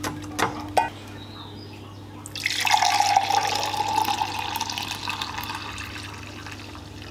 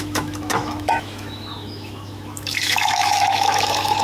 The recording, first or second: first